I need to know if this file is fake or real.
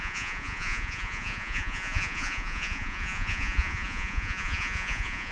fake